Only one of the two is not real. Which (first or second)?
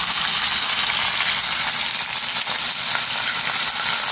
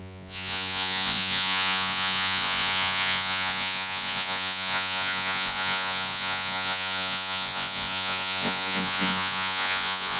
second